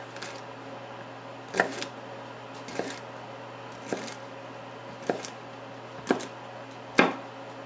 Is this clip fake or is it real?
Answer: real